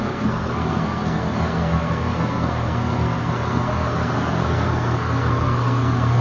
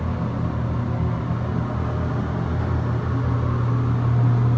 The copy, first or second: first